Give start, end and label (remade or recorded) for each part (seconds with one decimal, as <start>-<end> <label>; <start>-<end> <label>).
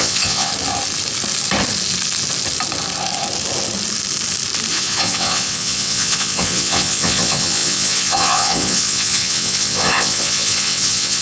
0.0-0.5 remade; 0.5-4.7 recorded; 4.7-11.2 remade